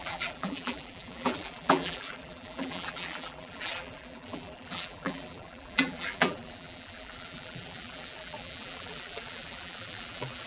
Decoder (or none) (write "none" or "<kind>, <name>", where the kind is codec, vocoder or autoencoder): vocoder, BigVGAN v2